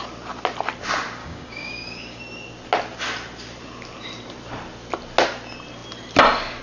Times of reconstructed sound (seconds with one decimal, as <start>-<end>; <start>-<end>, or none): 1.2-2.2

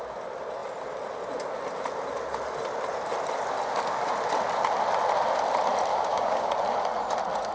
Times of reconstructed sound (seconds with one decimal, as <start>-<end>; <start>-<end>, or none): 5.9-6.5

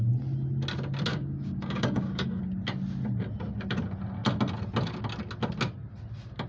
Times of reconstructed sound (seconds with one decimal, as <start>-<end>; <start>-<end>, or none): 1.1-2.4

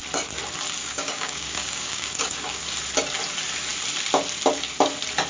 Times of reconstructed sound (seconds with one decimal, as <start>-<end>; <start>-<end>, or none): 0.8-2.6

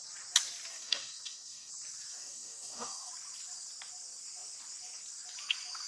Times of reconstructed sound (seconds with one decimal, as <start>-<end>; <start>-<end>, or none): 0.7-1.7; 2.1-3.1

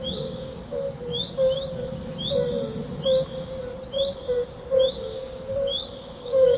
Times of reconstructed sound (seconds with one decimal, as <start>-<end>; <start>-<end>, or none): 0.0-1.1; 4.9-6.6

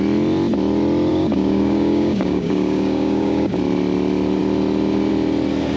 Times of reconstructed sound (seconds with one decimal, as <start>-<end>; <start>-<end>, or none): 1.1-3.6

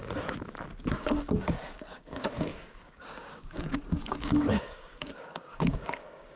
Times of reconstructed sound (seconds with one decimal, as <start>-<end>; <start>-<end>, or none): 0.9-6.4